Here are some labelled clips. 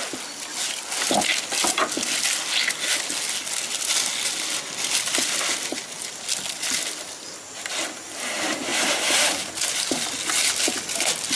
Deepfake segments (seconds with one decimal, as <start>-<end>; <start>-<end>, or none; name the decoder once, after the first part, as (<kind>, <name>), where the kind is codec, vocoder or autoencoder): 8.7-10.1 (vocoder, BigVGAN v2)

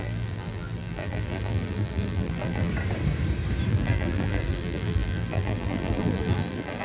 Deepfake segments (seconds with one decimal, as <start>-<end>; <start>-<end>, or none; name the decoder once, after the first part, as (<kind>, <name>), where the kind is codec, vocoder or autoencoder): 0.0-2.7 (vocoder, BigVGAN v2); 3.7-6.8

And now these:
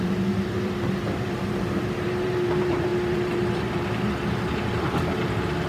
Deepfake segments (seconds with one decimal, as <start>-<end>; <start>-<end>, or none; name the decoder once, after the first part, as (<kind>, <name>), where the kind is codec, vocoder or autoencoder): 0.0-5.7 (vocoder, BigVGAN v2)

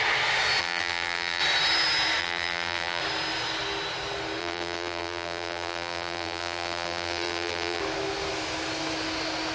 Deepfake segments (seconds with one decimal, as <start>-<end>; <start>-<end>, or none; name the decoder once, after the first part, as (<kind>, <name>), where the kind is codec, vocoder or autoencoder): 0.6-1.4 (vocoder, BigVGAN v2); 2.2-3.0; 4.4-7.8

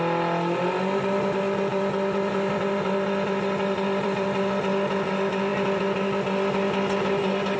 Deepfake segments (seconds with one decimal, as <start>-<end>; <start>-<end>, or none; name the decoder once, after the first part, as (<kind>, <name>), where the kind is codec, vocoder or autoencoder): 1.7-4.5 (vocoder, BigVGAN v2)

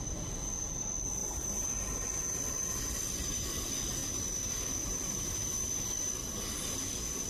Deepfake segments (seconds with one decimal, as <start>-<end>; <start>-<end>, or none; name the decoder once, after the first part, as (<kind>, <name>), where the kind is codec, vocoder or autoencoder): 1.2-1.7 (vocoder, BigVGAN v2); 4.0-6.4